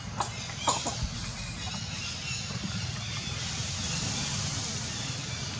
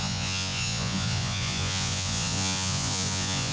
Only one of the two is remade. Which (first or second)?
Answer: second